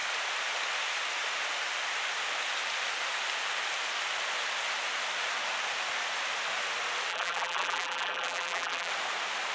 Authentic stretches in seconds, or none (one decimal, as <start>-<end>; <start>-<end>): 0.0-7.1; 8.9-9.5